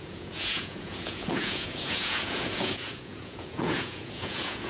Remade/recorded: remade